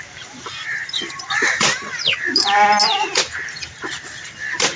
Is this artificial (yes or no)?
no